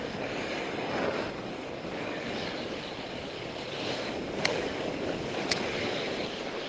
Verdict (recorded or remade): remade